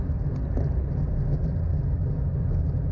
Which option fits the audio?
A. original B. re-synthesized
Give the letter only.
A